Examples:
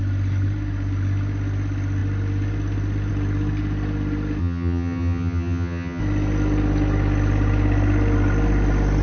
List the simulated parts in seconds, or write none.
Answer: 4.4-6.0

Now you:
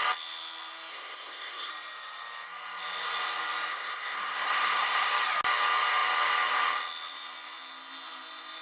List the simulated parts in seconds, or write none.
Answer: 0.9-1.7; 3.7-5.1

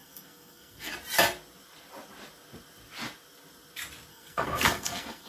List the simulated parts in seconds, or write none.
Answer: 0.0-0.9; 4.1-5.3

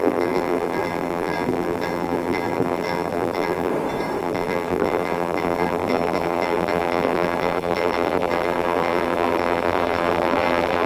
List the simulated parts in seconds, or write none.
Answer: 0.0-3.7; 4.2-10.9

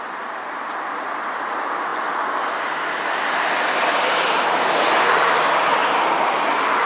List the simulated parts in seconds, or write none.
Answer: none

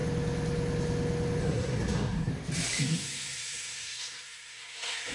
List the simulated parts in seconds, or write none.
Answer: 1.4-2.3; 2.8-5.1

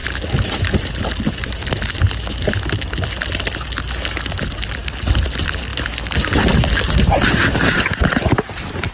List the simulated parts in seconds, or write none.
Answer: 4.1-5.7

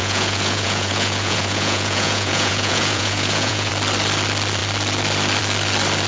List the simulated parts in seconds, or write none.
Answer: 0.0-3.7